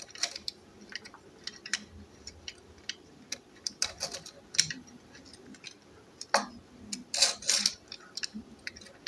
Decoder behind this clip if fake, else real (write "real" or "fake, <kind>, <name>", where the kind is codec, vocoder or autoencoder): real